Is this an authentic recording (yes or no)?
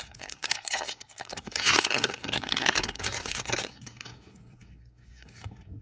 no